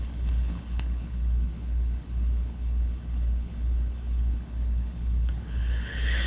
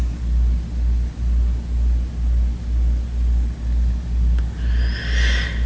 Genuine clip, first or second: second